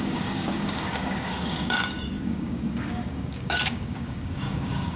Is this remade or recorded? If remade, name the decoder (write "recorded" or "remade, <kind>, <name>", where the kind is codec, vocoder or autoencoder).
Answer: remade, codec, DAC